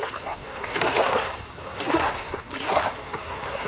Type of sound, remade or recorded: remade